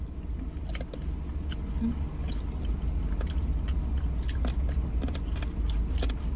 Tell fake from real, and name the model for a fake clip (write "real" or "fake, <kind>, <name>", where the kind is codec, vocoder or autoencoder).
real